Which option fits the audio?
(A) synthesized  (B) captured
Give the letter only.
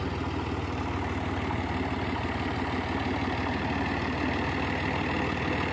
B